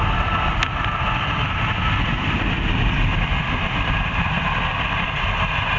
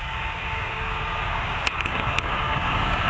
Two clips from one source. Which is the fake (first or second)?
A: second